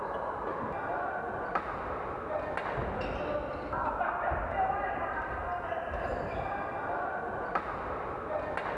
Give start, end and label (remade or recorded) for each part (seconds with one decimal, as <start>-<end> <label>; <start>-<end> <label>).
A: 0.0-8.8 recorded